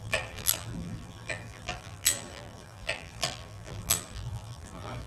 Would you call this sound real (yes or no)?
no